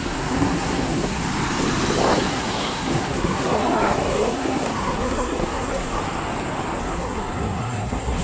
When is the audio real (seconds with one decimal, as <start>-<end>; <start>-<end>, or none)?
1.2-2.3; 6.0-6.8

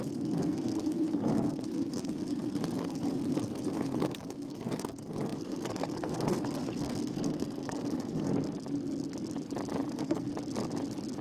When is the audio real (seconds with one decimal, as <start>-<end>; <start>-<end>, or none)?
8.3-9.9; 10.3-11.2

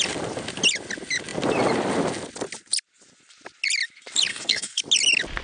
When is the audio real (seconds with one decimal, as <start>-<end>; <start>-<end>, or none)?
0.0-4.3; 4.8-5.4

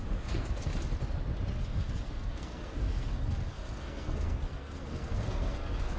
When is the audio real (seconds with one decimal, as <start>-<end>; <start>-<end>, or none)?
0.7-1.7